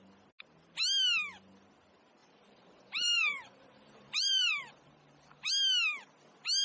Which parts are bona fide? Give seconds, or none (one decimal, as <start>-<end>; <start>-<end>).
0.0-2.2; 5.5-6.6